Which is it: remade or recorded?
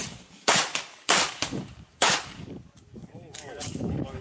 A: remade